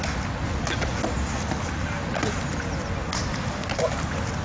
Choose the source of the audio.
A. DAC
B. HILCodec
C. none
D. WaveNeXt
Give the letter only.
C